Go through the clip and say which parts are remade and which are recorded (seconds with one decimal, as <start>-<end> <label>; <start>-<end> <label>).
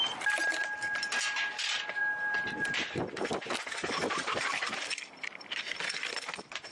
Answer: 0.0-4.0 recorded; 4.0-4.8 remade; 4.8-6.7 recorded